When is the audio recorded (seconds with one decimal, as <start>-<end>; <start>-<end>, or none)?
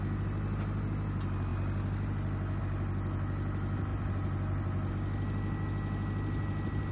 0.0-6.9